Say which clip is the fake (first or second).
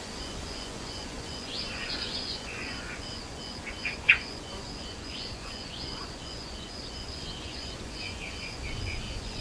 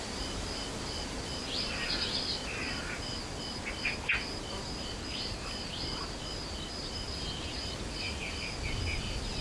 first